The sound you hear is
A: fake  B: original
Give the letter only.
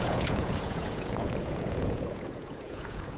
A